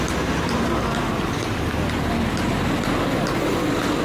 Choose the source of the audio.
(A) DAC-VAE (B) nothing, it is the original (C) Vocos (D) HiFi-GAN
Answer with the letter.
B